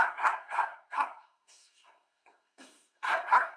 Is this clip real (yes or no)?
no